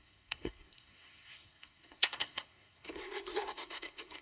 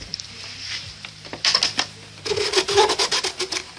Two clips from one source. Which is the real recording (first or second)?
second